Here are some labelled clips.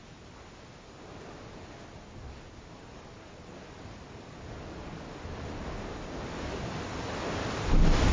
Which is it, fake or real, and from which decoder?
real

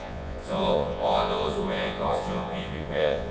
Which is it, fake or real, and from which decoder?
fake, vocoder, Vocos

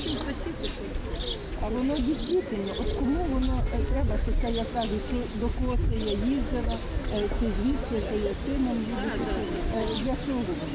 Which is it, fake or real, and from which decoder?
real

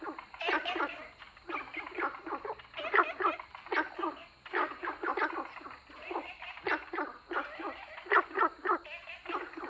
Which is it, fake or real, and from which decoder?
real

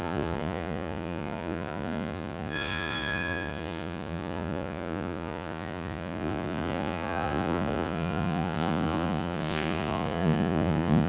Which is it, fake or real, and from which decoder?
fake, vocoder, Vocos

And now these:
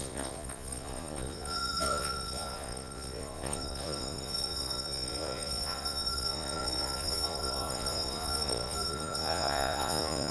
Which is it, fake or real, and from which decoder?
fake, vocoder, Vocos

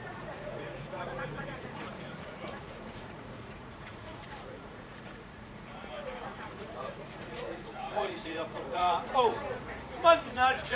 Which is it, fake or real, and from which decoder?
fake, vocoder, Vocos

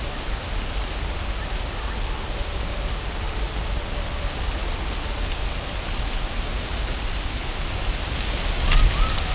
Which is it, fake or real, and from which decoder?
real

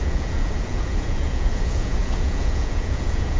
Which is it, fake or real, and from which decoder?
fake, vocoder, Vocos